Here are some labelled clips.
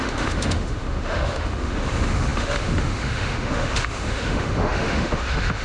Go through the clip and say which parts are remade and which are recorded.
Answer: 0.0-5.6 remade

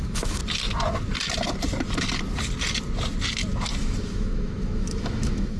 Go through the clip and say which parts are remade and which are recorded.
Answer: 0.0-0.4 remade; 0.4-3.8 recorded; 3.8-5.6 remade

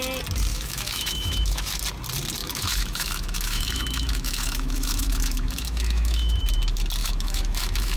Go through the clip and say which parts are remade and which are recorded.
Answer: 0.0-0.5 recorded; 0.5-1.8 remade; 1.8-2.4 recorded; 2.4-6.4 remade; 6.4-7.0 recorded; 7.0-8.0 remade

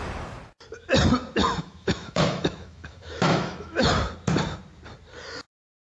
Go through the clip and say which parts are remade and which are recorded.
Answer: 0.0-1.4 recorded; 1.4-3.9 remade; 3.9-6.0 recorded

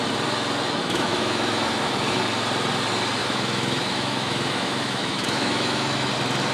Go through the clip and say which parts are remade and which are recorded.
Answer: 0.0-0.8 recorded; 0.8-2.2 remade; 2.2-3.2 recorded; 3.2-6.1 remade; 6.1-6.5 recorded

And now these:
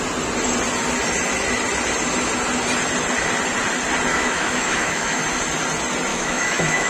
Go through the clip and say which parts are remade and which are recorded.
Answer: 0.0-4.1 recorded; 4.1-5.2 remade; 5.2-6.1 recorded; 6.1-6.9 remade

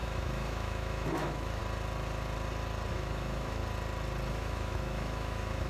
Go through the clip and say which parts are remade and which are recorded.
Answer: 0.0-1.6 remade; 1.6-2.9 recorded; 2.9-3.6 remade; 3.6-4.3 recorded; 4.3-5.7 remade